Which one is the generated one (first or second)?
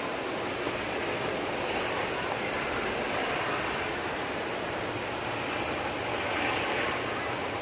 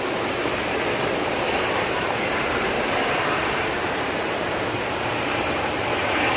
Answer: second